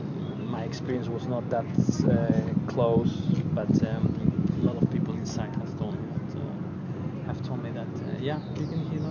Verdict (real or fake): real